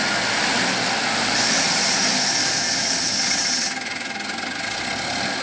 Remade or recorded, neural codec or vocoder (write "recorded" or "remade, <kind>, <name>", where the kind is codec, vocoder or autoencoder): recorded